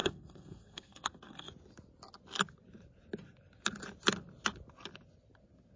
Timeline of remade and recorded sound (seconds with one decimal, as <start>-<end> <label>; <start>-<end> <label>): 0.0-1.5 remade; 1.5-5.8 recorded